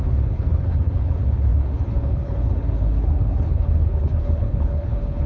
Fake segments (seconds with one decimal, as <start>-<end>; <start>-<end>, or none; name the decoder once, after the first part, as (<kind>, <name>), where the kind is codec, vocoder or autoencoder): 0.0-5.3 (codec, HILCodec)